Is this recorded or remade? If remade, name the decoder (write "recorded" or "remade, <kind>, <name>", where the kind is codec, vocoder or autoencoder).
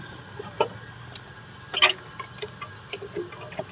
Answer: recorded